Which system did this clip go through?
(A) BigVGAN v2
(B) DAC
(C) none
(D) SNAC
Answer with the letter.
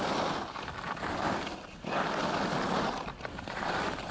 A